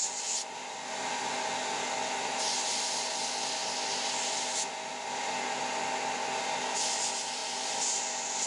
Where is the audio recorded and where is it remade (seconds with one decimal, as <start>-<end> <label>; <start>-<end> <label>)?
0.0-8.5 recorded

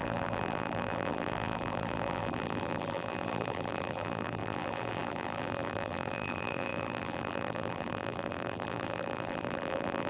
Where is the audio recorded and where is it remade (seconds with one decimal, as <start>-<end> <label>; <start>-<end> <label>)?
0.0-10.1 remade